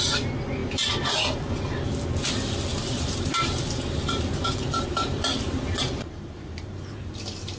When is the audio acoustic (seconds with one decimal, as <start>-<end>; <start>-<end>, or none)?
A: 0.0-2.7; 7.1-7.6